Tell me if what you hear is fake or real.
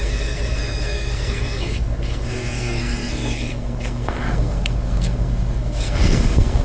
fake